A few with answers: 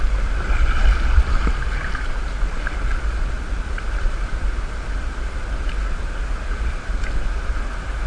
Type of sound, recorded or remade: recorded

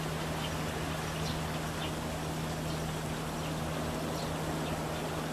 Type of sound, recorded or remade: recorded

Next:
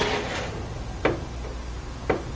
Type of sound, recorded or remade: recorded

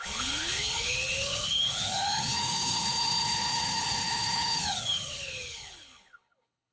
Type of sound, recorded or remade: remade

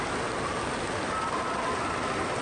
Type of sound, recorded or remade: recorded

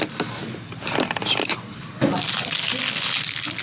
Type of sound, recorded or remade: recorded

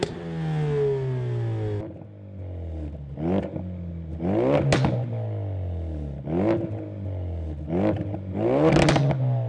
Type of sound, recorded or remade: recorded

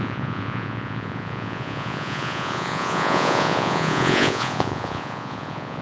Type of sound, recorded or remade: remade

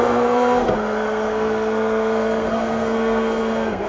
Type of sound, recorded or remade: remade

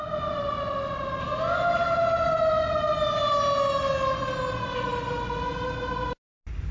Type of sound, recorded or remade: recorded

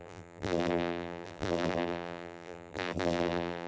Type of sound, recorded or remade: remade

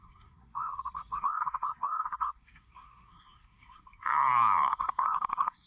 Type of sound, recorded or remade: remade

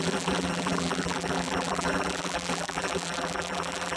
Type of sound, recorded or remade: remade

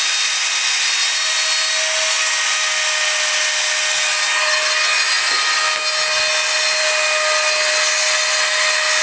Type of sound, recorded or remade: recorded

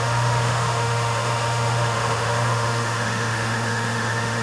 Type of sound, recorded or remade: remade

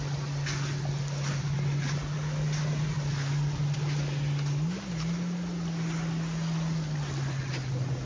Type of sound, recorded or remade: recorded